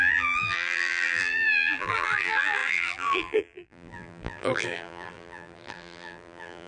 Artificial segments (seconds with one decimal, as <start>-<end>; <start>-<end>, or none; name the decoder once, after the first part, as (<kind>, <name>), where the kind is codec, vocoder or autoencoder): 0.0-6.7 (vocoder, BigVGAN v2)